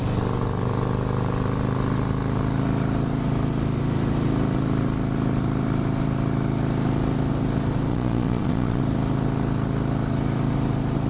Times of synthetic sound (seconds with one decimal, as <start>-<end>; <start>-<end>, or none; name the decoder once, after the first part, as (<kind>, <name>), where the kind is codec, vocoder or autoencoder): 7.9-8.8 (vocoder, Vocos)